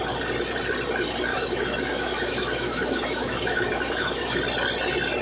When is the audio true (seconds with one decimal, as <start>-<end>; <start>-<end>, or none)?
0.0-1.3; 4.4-5.2